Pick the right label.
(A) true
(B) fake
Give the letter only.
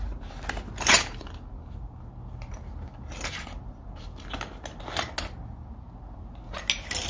A